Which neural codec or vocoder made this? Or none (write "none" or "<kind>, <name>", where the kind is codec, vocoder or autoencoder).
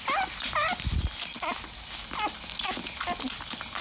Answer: none